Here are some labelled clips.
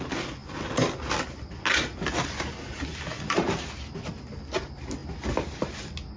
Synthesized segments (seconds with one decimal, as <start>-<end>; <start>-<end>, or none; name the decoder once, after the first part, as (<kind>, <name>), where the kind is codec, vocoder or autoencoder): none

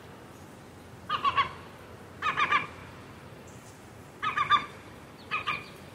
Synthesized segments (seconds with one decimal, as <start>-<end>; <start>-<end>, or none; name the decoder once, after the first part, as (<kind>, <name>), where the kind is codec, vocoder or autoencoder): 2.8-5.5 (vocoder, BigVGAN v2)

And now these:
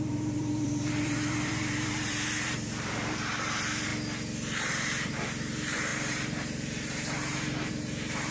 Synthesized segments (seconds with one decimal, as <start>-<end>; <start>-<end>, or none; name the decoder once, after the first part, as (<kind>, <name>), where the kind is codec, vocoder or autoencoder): 0.0-3.9 (vocoder, BigVGAN v2); 4.7-8.3

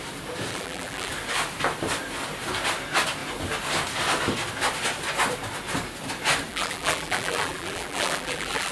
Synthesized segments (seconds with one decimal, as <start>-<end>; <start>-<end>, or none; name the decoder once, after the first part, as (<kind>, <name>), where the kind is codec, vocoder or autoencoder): 0.5-1.1 (vocoder, BigVGAN v2); 6.5-8.7

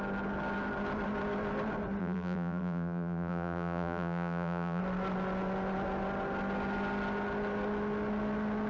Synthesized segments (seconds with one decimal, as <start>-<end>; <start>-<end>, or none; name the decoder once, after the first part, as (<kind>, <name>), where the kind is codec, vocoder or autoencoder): 2.0-4.8 (vocoder, BigVGAN v2)

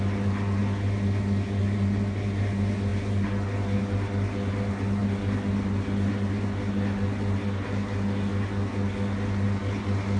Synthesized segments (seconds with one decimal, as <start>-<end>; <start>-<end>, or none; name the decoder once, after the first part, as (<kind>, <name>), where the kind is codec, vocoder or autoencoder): none

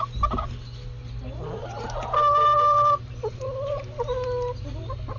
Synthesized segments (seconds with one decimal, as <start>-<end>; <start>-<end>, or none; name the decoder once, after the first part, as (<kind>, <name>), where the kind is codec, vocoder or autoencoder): 1.6-3.4 (vocoder, BigVGAN v2)